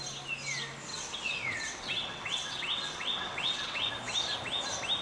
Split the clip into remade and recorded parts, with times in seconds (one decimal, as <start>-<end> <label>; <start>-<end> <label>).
0.0-0.9 recorded; 0.9-3.9 remade; 3.9-5.0 recorded